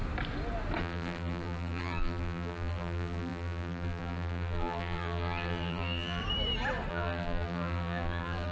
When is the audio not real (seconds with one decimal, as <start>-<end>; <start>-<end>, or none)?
0.8-6.2; 6.9-8.5